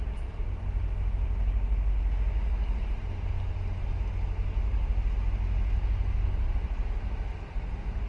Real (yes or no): yes